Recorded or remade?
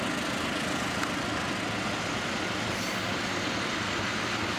recorded